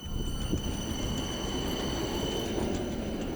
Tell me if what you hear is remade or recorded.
recorded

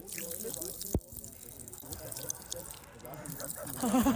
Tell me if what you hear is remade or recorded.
remade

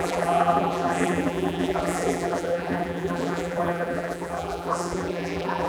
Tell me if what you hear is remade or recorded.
remade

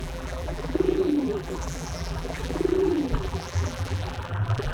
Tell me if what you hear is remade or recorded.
remade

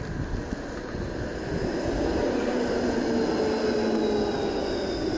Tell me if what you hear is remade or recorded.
recorded